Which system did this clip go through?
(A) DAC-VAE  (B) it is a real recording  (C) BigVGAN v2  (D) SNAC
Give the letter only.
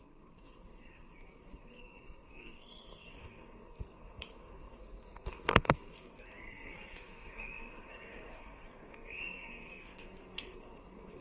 D